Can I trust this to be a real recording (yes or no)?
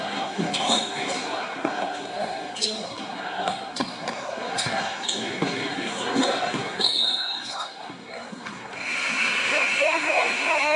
no